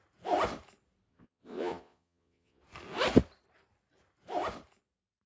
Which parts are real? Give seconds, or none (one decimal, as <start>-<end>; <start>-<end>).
0.0-1.1; 2.6-5.3